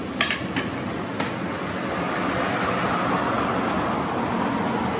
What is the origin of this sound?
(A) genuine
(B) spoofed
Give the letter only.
A